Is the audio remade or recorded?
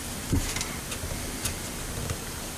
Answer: recorded